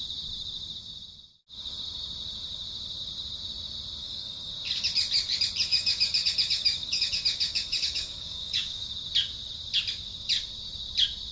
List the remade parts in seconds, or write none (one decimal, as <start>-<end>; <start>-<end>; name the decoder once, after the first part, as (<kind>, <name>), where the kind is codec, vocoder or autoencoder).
4.0-4.5 (codec, DAC); 5.7-8.9